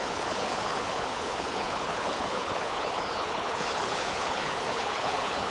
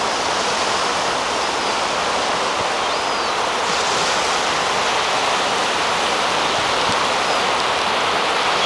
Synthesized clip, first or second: first